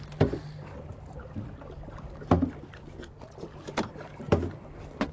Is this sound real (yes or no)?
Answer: yes